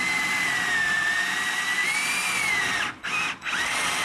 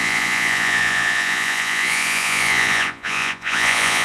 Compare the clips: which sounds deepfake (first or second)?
second